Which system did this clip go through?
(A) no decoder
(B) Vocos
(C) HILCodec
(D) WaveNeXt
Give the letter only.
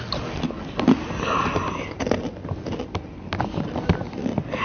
A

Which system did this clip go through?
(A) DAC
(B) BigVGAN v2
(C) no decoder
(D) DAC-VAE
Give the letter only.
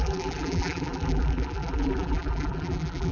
B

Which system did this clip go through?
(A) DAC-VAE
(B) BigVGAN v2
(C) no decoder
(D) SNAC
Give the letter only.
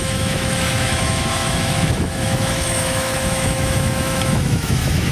A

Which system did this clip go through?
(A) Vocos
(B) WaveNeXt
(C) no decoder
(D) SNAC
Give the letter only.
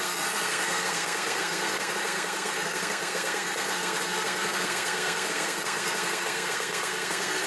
D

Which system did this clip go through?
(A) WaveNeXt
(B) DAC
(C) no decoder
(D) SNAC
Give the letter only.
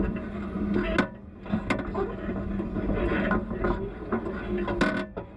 C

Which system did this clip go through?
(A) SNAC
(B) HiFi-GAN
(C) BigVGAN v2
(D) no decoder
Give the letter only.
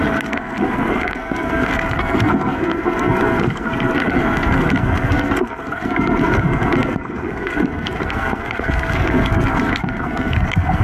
A